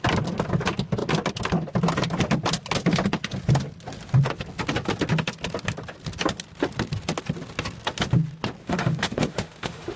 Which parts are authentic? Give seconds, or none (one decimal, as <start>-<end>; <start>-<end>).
0.0-8.6